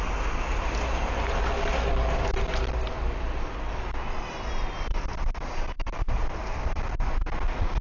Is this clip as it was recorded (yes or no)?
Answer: yes